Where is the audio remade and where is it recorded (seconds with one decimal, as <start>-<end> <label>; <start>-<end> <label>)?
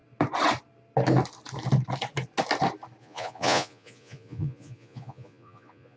0.0-3.0 recorded; 3.0-6.0 remade